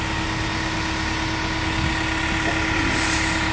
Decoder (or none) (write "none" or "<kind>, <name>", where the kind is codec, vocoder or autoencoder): none